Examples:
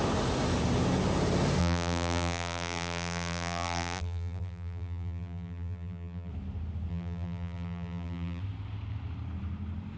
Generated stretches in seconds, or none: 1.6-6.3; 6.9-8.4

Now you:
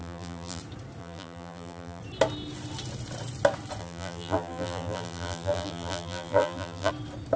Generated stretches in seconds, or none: 0.0-0.6; 1.0-2.0; 3.8-6.9

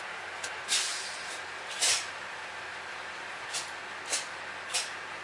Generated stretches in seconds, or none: 0.9-3.8

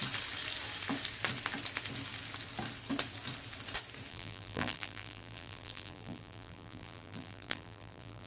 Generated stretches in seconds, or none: 4.1-8.3

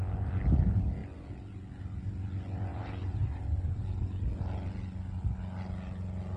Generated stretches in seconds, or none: 2.7-3.4